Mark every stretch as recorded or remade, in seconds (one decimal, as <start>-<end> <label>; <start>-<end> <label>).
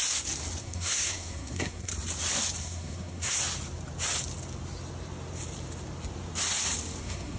0.0-0.6 recorded; 0.6-1.9 remade; 1.9-2.6 recorded; 2.6-3.4 remade; 3.4-7.0 recorded; 7.0-7.4 remade